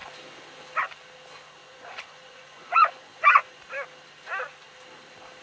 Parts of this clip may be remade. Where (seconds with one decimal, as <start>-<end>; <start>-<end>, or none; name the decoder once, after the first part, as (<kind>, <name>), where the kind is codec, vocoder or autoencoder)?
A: 1.6-3.6 (vocoder, Vocos)